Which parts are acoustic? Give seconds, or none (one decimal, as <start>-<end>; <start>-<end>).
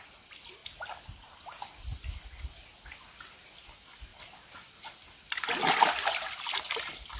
0.0-7.2